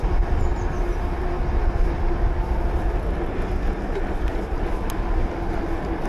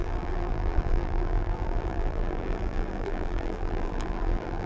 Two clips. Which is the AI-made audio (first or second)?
second